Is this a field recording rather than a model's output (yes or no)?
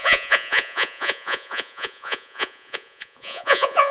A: no